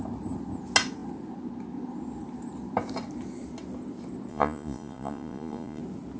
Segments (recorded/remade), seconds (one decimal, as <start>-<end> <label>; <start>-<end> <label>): 0.0-4.3 recorded; 4.3-5.8 remade; 5.8-6.2 recorded

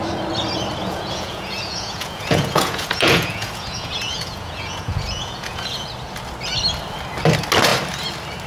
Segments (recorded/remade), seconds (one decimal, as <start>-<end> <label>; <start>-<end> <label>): 0.0-0.8 recorded; 0.8-5.9 remade; 5.9-8.5 recorded